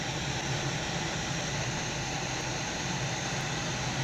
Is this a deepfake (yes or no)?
no